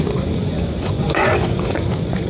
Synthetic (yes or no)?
yes